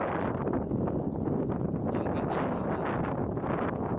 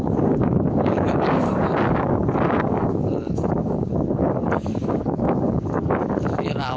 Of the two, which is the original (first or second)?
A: first